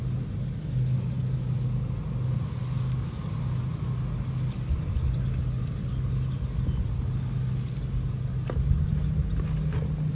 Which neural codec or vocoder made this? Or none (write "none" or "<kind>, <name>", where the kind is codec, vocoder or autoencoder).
none